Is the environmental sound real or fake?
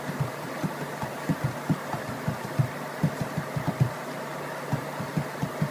real